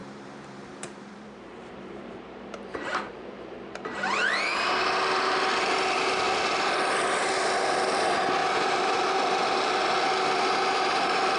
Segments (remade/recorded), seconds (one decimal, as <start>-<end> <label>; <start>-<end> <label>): 0.0-4.7 remade; 4.7-8.4 recorded; 8.4-9.8 remade; 9.8-11.4 recorded